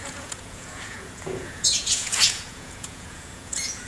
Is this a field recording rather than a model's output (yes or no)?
no